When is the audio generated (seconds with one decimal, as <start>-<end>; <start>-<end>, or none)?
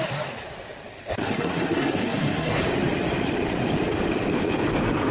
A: 1.2-2.6